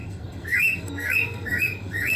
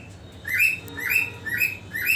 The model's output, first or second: first